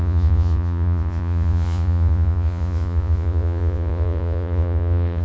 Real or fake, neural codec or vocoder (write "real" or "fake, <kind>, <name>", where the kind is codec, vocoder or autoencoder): fake, vocoder, Vocos